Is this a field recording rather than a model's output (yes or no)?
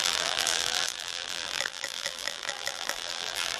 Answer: no